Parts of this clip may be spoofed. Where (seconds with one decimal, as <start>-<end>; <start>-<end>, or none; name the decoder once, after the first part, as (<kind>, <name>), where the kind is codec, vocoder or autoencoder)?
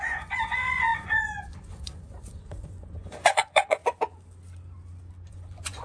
0.0-3.8 (vocoder, Vocos); 5.3-5.8